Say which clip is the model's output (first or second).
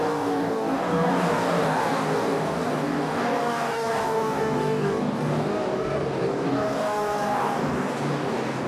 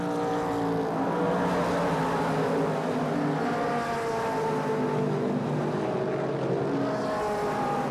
first